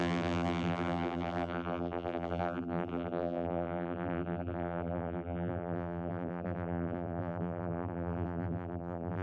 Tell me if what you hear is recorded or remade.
remade